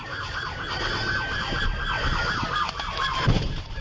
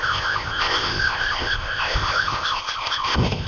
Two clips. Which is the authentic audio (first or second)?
first